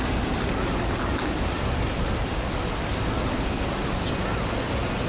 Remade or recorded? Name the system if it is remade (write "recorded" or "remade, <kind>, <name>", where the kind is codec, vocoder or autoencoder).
recorded